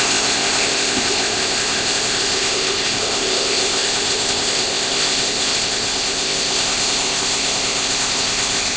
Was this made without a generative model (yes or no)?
no